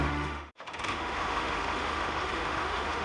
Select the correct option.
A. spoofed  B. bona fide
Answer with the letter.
A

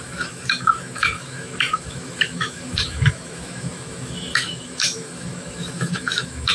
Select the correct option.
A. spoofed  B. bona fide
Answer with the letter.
A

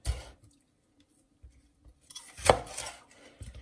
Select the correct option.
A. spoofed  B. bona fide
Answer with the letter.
B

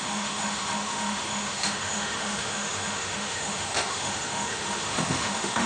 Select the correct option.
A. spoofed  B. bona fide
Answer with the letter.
A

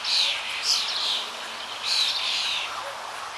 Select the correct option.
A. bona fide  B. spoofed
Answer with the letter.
A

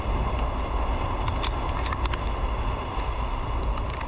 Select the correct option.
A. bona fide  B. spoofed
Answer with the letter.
A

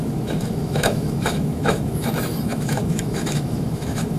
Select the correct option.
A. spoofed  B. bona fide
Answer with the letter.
A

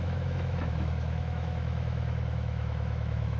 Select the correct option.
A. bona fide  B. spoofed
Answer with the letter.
B